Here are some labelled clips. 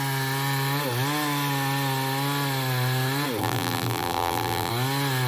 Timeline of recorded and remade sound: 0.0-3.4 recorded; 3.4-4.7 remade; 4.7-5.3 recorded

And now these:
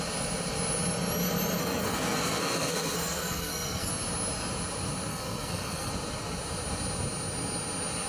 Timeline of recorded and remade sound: 0.0-1.6 recorded; 1.6-3.9 remade; 3.9-5.1 recorded; 5.1-5.9 remade; 5.9-8.1 recorded

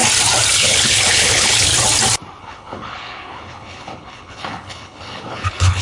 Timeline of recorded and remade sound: 0.0-0.5 recorded; 0.5-1.7 remade; 1.7-2.4 recorded; 2.4-5.8 remade

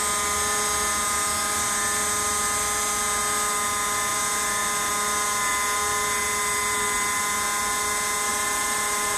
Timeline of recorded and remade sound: 0.0-8.3 recorded; 8.3-9.2 remade

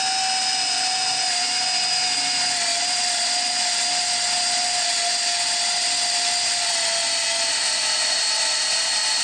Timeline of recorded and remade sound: 0.0-9.2 recorded

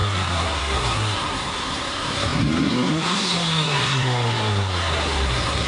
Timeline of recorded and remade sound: 0.0-5.7 remade

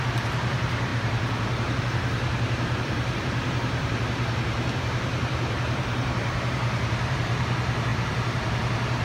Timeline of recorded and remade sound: 0.0-9.0 remade